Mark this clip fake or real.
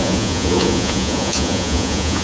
fake